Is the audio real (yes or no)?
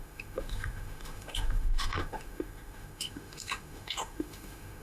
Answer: no